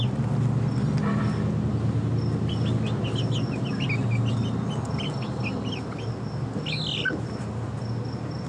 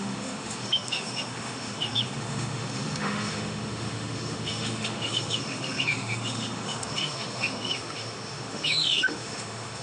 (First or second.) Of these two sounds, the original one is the first